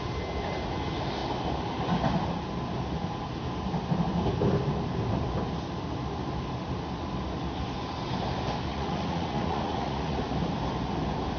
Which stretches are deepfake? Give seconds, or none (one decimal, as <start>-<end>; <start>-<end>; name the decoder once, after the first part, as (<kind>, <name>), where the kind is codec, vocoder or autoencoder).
8.7-10.2 (vocoder, Vocos)

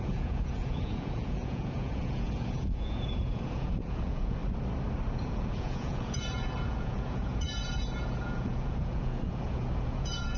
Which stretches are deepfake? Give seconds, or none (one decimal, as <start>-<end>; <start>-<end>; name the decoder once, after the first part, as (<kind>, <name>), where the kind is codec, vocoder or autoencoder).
0.0-4.4 (vocoder, Vocos); 5.1-10.4

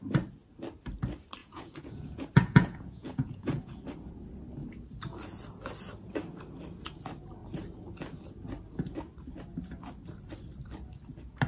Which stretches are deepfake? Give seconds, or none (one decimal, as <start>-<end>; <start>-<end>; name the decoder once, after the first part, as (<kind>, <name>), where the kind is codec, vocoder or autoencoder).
1.4-3.8 (vocoder, Vocos)

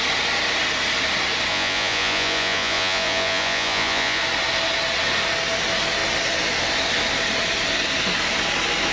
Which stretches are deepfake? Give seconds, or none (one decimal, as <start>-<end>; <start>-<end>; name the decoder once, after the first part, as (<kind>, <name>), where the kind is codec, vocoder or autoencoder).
1.5-4.2 (vocoder, Vocos)